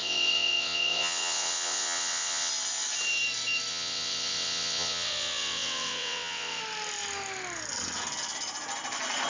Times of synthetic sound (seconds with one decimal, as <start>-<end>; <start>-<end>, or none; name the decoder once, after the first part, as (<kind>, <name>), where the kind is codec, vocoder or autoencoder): 0.0-2.5 (vocoder, WaveNeXt); 3.7-6.6